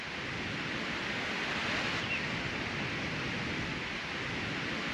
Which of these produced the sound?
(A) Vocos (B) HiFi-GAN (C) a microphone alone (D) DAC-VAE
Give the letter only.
C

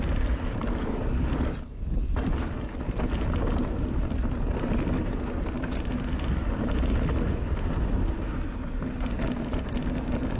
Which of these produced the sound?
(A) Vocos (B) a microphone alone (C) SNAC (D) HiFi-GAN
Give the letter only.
B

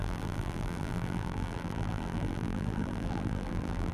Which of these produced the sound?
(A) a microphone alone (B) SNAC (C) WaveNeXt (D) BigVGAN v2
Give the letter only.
D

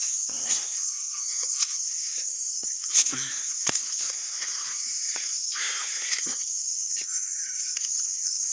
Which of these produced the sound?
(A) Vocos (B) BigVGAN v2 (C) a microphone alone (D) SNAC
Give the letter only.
D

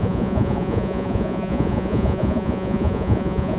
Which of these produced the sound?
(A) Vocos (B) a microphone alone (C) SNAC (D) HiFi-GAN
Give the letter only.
A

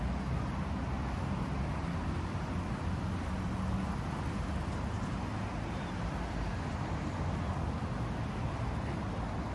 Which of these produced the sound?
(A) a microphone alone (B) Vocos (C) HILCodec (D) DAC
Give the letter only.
A